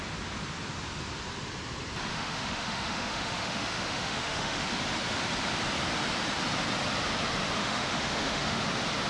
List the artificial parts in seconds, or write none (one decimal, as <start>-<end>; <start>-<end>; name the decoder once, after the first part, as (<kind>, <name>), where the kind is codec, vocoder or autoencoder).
2.1-4.7 (autoencoder, DAC-VAE); 7.6-8.6